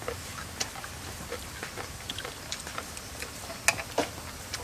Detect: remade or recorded recorded